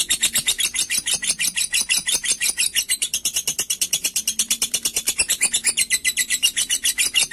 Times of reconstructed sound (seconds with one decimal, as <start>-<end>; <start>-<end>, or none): 2.0-5.2; 6.0-6.7